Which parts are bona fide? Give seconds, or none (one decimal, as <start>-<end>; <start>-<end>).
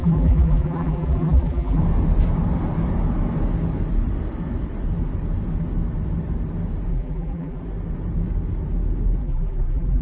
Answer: 1.8-6.9; 7.6-9.2